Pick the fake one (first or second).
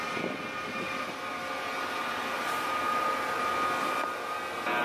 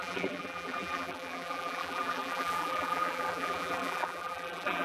second